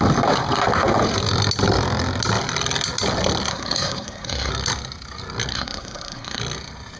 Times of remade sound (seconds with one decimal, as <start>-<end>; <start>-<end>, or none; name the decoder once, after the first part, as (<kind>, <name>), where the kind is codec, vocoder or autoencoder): 3.5-4.5 (codec, SNAC); 5.5-6.4